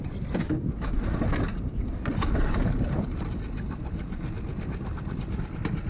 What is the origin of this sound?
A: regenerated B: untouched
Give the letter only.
B